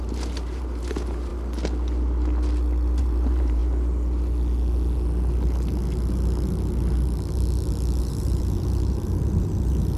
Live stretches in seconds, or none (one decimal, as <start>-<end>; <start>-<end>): 1.3-3.0; 3.6-8.0